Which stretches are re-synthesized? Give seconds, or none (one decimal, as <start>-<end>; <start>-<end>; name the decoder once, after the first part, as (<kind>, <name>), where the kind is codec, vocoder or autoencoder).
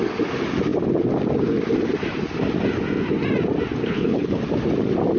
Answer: 3.8-4.4 (codec, HILCodec)